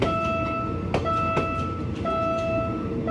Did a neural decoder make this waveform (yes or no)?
no